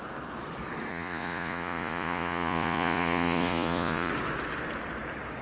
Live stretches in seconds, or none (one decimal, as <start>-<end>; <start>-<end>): 0.0-0.9; 4.1-5.4